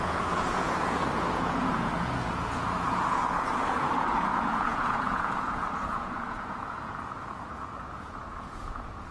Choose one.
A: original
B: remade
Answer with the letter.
B